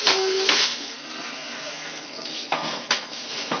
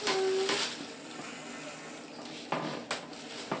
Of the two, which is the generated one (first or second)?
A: first